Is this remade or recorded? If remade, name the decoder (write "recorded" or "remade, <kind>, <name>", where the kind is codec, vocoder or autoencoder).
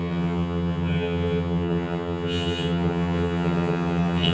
remade, vocoder, HiFi-GAN